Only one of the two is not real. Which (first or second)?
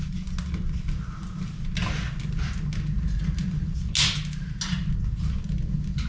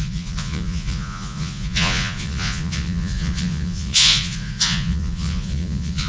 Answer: second